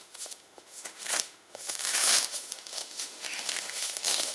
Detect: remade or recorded remade